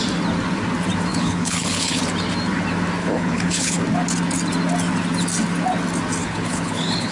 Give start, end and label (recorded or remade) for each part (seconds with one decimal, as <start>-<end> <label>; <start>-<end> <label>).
0.0-1.1 recorded; 1.1-2.0 remade; 2.0-3.0 recorded; 3.0-3.8 remade; 3.8-6.2 recorded; 6.2-7.1 remade